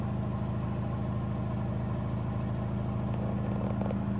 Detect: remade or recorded recorded